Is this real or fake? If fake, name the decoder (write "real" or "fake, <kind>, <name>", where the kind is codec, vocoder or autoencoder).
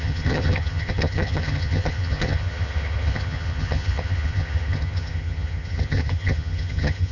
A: fake, vocoder, HiFi-GAN